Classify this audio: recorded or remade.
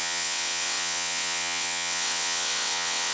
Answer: remade